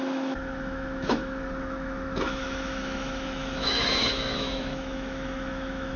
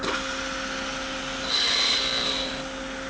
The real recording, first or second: second